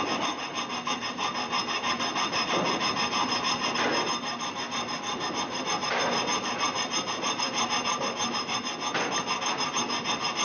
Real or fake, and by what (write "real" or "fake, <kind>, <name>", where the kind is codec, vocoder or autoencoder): real